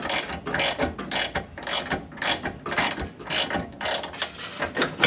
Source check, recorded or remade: recorded